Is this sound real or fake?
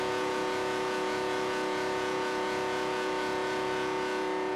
fake